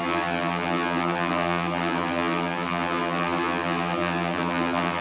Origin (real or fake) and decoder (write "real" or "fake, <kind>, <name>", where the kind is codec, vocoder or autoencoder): fake, vocoder, BigVGAN v2